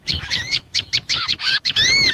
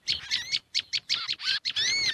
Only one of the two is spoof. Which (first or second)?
first